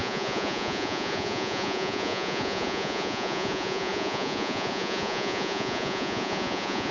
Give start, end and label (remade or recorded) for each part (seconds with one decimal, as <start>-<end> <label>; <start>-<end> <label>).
0.0-6.9 remade